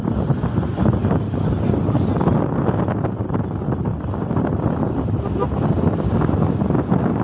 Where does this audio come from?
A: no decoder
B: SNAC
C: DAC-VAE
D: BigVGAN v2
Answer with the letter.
A